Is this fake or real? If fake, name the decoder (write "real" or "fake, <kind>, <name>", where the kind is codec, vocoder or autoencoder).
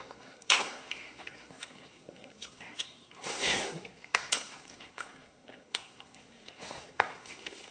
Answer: fake, codec, SNAC